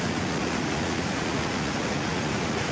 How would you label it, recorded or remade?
remade